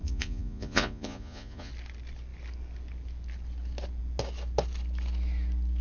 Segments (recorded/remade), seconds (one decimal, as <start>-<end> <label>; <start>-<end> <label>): 0.0-1.7 remade; 1.7-5.8 recorded